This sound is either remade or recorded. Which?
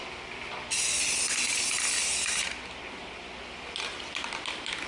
recorded